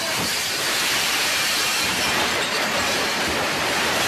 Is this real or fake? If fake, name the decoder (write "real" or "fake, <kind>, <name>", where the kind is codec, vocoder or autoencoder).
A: fake, vocoder, BigVGAN v2